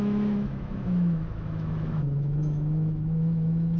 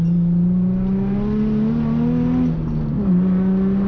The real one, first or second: second